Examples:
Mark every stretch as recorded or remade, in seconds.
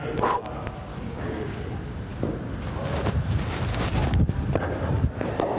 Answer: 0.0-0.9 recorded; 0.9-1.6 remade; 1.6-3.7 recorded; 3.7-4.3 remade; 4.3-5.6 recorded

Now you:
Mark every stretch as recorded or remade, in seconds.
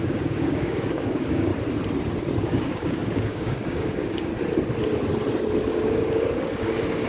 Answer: 0.0-1.5 remade; 1.5-2.4 recorded; 2.4-4.3 remade; 4.3-5.7 recorded; 5.7-7.1 remade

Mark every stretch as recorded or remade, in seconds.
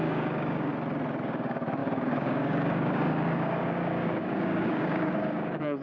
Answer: 0.0-0.7 remade; 0.7-1.2 recorded; 1.2-5.8 remade